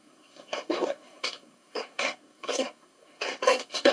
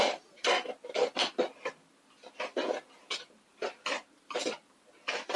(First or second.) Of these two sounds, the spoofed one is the first